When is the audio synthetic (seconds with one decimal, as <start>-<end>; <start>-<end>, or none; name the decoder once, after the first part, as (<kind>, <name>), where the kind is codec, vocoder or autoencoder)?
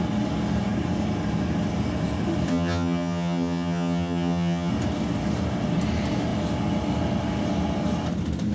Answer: 2.5-4.7 (vocoder, HiFi-GAN)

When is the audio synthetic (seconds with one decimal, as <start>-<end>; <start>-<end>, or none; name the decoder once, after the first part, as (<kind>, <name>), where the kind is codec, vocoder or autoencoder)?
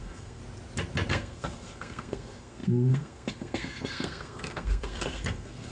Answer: 0.0-0.4 (codec, SNAC); 1.1-5.7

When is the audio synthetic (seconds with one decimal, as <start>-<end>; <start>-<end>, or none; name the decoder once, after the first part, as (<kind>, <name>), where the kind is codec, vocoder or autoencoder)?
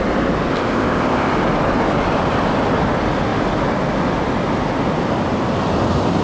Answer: 0.5-1.3 (codec, ZipCodec)